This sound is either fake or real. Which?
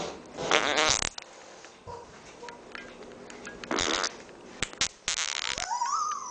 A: real